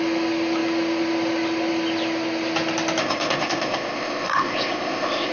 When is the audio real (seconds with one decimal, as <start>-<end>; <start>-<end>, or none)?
0.0-3.0